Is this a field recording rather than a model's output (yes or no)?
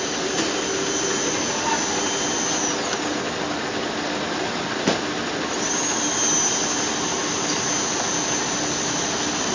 yes